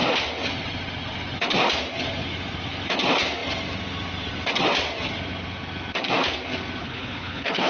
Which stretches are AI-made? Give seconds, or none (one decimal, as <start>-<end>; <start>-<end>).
6.8-7.7

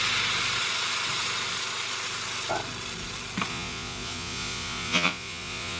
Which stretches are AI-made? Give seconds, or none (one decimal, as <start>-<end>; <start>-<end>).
3.5-5.8

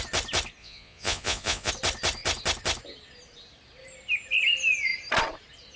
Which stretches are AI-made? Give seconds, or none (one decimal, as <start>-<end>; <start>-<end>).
0.6-1.7